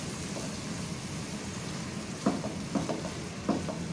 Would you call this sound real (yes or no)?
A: yes